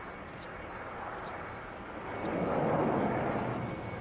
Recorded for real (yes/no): yes